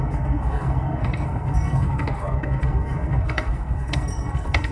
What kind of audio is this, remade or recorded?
remade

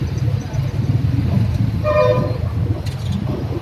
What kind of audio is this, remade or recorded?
recorded